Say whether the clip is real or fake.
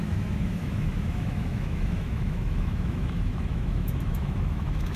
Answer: fake